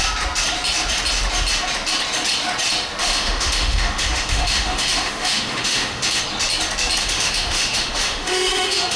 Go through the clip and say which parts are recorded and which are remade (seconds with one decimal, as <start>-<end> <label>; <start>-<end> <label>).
0.0-3.0 recorded; 3.0-6.2 remade; 6.2-7.0 recorded; 7.0-9.0 remade